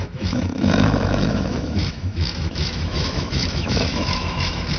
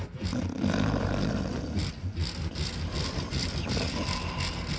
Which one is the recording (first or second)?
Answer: second